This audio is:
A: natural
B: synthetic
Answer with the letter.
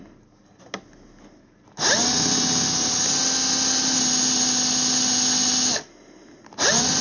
A